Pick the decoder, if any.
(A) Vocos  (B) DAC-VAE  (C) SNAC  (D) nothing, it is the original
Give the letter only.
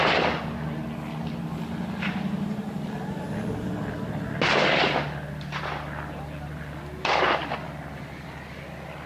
D